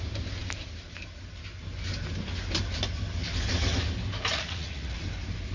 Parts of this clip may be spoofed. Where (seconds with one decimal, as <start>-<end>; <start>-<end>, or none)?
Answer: 4.3-5.0